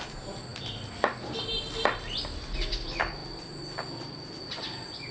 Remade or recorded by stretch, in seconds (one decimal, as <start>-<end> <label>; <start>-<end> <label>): 0.0-5.1 recorded

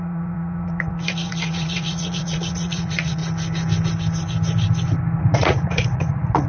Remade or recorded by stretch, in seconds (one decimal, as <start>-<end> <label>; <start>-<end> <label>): 0.0-3.2 remade; 3.2-5.2 recorded; 5.2-6.5 remade

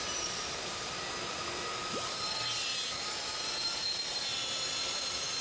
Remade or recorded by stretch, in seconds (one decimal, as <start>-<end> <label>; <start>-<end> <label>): 0.0-5.4 remade